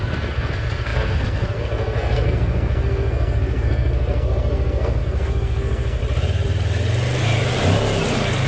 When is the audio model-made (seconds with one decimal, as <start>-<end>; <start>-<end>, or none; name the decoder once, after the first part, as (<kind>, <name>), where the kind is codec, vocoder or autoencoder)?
0.0-6.0 (codec, SNAC)